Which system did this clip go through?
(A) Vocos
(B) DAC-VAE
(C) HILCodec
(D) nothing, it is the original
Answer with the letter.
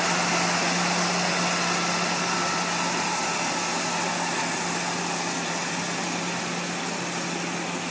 D